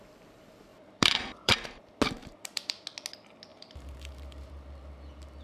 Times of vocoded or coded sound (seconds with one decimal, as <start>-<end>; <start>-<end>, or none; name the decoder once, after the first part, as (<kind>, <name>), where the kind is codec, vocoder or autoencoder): 0.7-1.8 (vocoder, BigVGAN v2); 2.2-2.8; 3.5-4.5